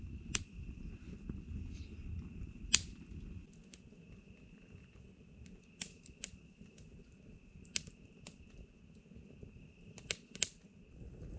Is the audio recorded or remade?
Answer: recorded